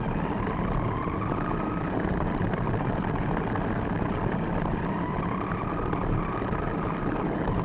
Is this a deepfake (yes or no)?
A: no